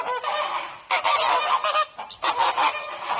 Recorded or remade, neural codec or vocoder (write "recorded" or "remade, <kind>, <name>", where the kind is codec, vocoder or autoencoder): recorded